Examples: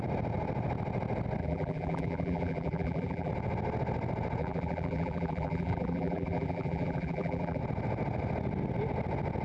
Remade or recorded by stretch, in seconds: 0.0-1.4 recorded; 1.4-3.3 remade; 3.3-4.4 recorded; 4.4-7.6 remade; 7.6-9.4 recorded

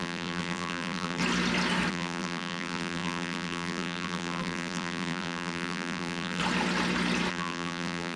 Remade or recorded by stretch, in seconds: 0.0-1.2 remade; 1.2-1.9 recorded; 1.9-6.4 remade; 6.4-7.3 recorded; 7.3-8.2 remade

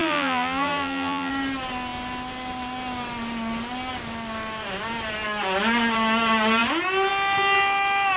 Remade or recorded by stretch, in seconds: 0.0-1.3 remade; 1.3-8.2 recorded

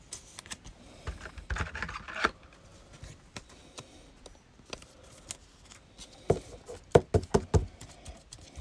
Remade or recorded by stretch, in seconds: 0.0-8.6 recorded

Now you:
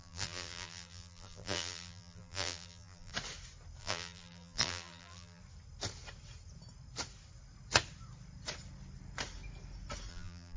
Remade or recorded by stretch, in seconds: 0.0-3.1 remade; 3.1-3.8 recorded; 3.8-5.4 remade; 5.4-10.1 recorded; 10.1-10.6 remade

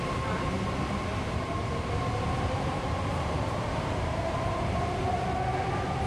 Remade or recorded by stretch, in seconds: 0.0-1.1 recorded; 1.1-4.8 remade; 4.8-6.1 recorded

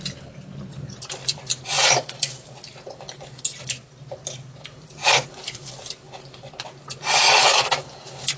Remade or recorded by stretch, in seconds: 0.0-3.8 recorded; 3.8-6.5 remade; 6.5-8.4 recorded